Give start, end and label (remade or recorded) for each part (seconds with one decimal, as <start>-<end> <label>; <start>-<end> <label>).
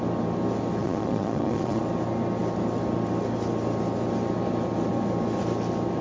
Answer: 0.0-0.8 recorded; 0.8-1.8 remade; 1.8-6.0 recorded